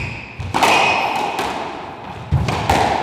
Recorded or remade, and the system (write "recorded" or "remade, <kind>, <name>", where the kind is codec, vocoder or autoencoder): recorded